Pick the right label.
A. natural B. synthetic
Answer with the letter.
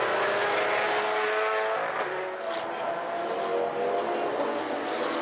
A